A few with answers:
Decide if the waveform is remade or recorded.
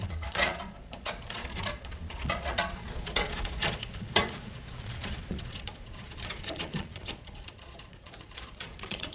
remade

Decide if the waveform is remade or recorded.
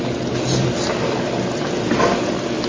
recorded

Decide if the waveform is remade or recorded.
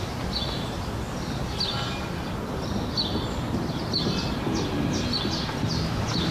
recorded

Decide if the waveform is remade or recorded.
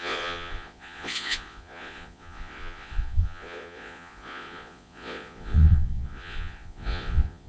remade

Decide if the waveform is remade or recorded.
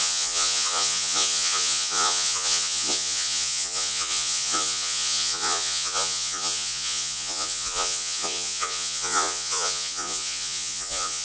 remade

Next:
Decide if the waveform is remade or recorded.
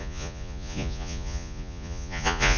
remade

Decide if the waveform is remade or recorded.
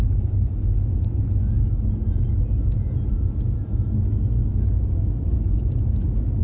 recorded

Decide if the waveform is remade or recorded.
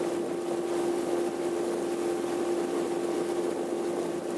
recorded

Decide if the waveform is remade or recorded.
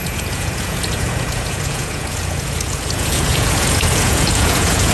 remade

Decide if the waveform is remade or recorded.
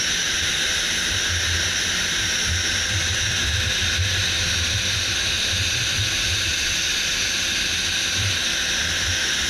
recorded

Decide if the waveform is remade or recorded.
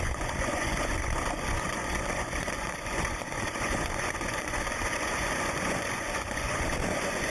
remade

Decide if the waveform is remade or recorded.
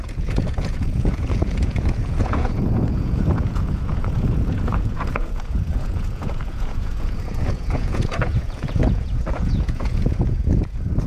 remade